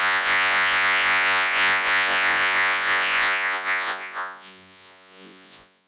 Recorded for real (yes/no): no